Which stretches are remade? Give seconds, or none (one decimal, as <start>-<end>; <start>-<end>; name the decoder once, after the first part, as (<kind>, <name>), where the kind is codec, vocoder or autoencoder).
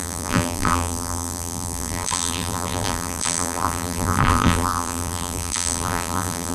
0.0-6.5 (vocoder, BigVGAN v2)